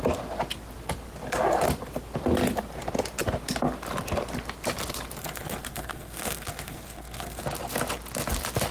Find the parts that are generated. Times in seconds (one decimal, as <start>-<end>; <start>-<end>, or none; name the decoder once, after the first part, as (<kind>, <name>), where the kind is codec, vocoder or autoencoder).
5.2-7.4 (codec, SNAC)